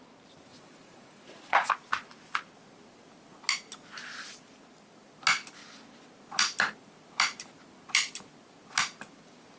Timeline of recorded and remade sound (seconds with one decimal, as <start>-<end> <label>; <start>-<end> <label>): 0.0-0.5 recorded; 0.5-1.7 remade; 1.7-9.6 recorded